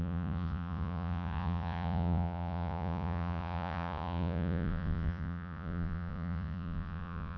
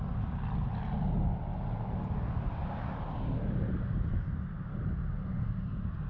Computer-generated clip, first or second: first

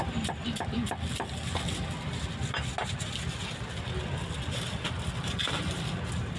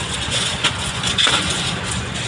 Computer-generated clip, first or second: second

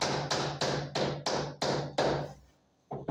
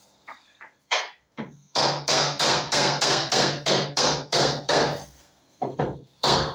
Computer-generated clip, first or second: second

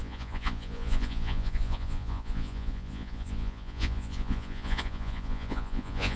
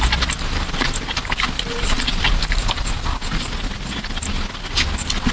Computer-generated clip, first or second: first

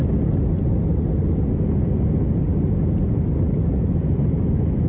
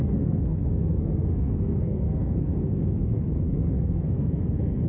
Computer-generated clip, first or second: second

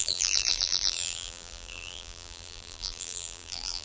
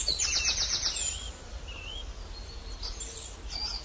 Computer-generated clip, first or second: first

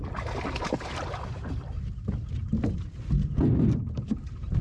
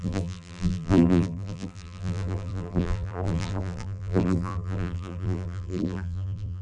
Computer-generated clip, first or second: second